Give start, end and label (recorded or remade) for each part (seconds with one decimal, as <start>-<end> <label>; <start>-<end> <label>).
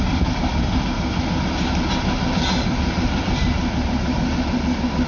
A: 0.0-5.1 recorded